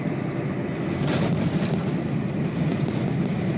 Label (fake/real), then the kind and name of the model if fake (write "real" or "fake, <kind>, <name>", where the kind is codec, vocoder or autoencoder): real